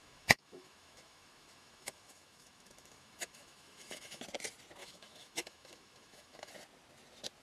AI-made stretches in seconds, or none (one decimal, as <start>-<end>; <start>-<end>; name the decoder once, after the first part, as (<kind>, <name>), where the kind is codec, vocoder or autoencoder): 0.0-4.2 (autoencoder, DAC-VAE); 4.8-6.5